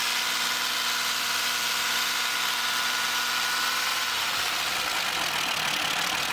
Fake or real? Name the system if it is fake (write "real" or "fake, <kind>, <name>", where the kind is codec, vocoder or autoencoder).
real